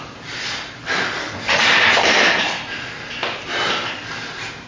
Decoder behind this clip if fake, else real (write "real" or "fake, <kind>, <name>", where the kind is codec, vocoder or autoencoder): real